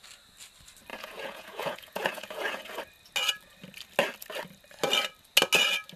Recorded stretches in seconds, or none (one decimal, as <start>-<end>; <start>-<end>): 0.0-0.9; 2.8-6.0